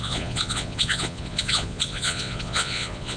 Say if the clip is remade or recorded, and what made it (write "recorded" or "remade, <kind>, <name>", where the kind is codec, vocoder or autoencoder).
remade, vocoder, Vocos